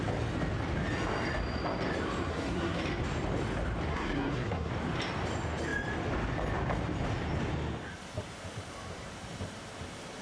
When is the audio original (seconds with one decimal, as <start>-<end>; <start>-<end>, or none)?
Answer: 0.0-2.3; 2.8-3.9; 4.7-10.2